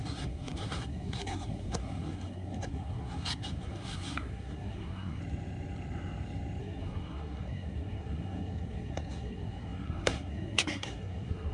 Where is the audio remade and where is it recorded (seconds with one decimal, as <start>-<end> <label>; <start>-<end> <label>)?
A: 0.0-5.2 remade; 5.2-6.6 recorded; 6.6-11.5 remade